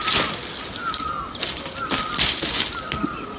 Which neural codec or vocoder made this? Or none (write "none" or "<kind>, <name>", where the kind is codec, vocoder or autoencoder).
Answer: none